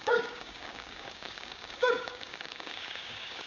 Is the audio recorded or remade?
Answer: remade